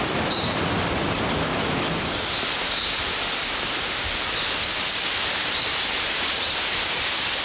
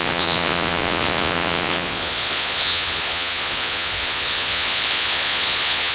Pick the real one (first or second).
first